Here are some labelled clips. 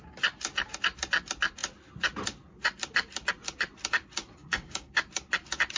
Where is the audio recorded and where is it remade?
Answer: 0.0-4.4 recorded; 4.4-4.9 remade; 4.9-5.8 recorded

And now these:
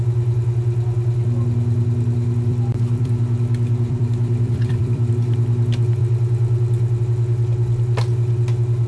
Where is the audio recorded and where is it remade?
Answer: 0.0-2.5 recorded; 2.5-5.1 remade; 5.1-8.9 recorded